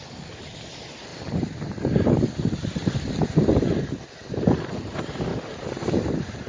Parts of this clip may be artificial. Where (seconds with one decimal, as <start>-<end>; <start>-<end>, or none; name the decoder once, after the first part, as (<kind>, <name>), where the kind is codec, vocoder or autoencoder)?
1.1-3.8 (vocoder, BigVGAN v2); 5.3-6.5